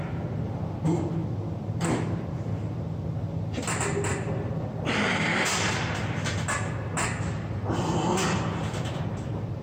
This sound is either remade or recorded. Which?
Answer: recorded